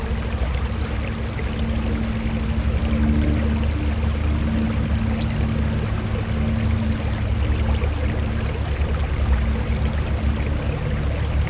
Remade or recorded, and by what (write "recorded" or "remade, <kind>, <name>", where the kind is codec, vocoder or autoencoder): recorded